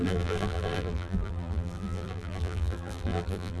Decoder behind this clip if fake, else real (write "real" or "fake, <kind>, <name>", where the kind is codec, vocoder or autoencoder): fake, vocoder, BigVGAN v2